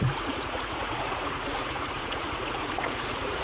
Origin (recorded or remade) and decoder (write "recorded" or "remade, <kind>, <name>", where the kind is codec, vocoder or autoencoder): remade, vocoder, Vocos